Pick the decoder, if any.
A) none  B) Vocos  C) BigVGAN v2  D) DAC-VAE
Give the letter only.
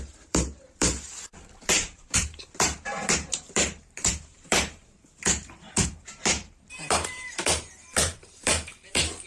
C